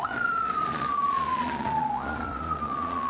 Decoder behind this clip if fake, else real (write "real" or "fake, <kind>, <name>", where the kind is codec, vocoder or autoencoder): fake, vocoder, Vocos